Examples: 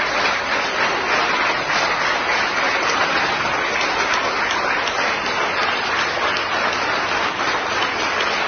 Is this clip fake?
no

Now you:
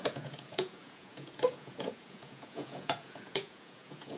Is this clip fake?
yes